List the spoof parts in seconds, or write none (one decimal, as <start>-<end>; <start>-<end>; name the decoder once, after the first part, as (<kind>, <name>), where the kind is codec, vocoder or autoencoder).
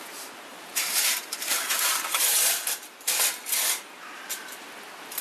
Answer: 0.5-3.2 (vocoder, BigVGAN v2)